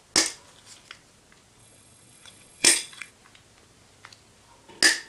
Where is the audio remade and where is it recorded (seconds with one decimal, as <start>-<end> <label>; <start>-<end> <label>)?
0.0-1.6 recorded; 1.6-3.1 remade; 3.1-5.1 recorded